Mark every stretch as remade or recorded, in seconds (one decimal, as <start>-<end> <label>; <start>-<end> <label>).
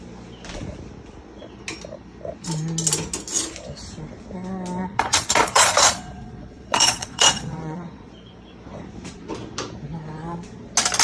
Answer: 0.0-4.8 recorded; 4.8-8.1 remade; 8.1-11.0 recorded